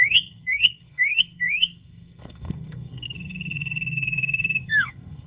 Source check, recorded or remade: remade